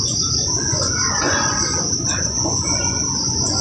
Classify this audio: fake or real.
fake